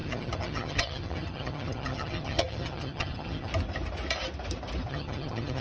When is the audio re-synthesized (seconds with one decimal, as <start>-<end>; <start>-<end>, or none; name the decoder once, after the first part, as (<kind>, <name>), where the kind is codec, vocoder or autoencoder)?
0.0-3.5 (vocoder, HiFi-GAN); 4.9-5.6